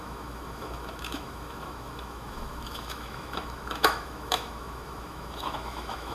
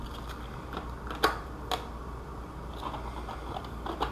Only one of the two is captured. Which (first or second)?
second